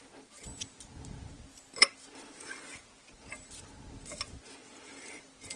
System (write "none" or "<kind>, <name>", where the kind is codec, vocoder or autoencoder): none